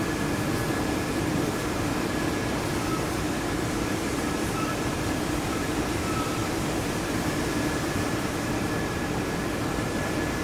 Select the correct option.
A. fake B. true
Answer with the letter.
A